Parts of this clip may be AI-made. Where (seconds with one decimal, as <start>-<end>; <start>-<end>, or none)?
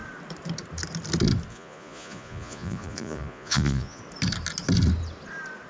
1.5-4.0